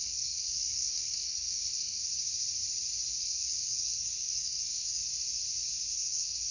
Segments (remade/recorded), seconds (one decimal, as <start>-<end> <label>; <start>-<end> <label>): 0.0-2.0 remade; 2.0-3.2 recorded; 3.2-5.0 remade; 5.0-5.9 recorded; 5.9-6.5 remade